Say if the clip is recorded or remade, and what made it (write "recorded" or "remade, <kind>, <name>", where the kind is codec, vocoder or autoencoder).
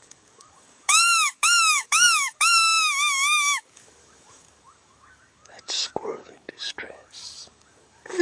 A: remade, codec, DAC